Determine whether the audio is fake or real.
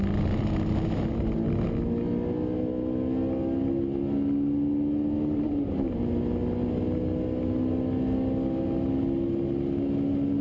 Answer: real